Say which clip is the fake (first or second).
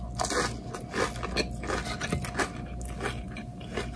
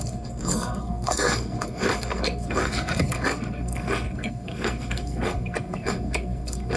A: second